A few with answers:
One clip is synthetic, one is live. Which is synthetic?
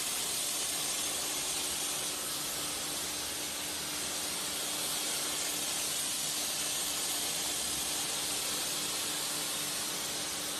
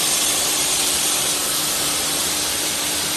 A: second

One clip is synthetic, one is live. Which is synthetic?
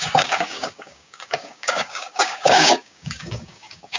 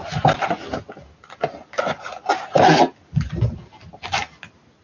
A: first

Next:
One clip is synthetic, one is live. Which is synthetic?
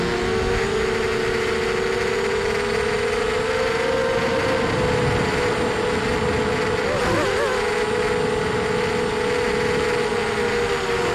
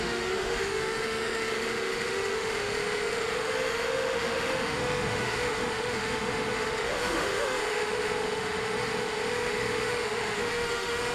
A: second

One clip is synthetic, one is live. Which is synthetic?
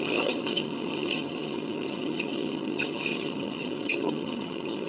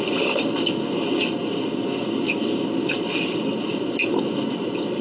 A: first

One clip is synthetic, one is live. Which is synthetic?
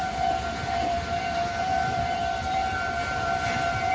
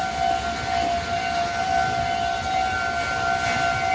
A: first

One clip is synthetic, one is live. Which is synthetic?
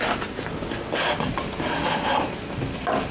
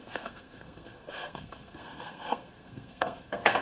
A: second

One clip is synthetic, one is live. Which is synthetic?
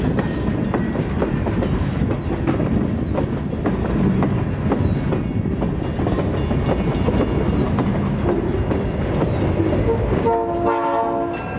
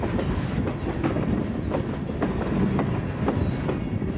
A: second